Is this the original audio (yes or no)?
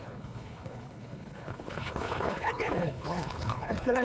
no